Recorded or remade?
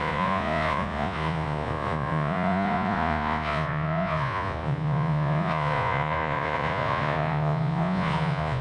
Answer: remade